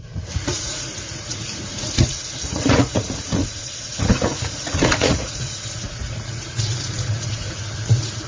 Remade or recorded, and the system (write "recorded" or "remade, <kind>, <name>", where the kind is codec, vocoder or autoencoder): remade, vocoder, Vocos